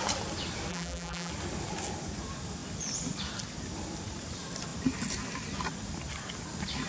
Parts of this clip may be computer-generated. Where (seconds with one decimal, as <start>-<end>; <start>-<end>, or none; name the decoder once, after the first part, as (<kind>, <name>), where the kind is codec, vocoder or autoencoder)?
0.7-1.3 (vocoder, BigVGAN v2)